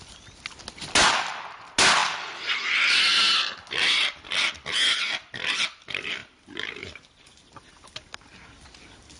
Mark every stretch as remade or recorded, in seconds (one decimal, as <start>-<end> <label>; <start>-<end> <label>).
0.0-6.2 recorded; 6.2-7.7 remade; 7.7-9.2 recorded